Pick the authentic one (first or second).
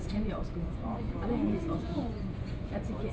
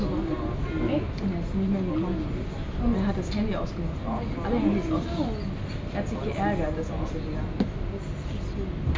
second